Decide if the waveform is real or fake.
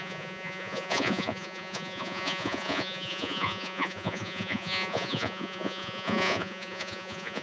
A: fake